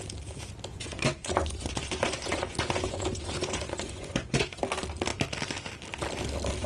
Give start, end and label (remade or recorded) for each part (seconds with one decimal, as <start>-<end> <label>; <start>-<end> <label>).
0.0-0.7 recorded; 0.7-4.6 remade; 4.6-6.7 recorded